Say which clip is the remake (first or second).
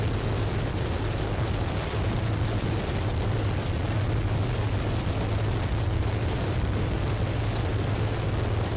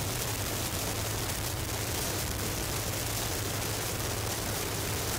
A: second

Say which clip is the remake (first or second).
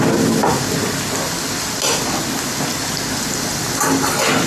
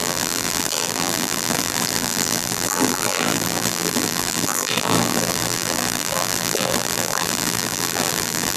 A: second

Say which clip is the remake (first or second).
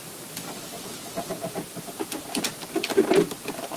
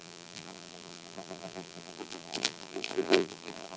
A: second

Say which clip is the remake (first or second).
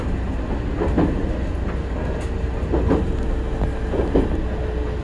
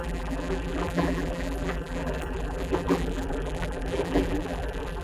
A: second